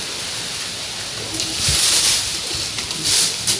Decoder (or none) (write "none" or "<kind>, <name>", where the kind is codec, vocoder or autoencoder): vocoder, BigVGAN v2